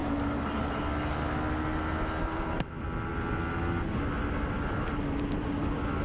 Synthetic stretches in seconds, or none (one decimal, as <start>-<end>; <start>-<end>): 0.0-0.8; 2.2-2.7